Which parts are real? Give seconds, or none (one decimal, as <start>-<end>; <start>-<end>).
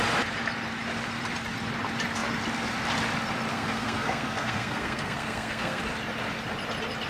0.0-3.5; 5.8-7.1